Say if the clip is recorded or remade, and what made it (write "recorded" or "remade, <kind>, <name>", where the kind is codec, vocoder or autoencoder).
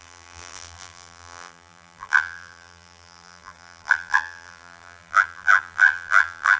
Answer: remade, vocoder, BigVGAN v2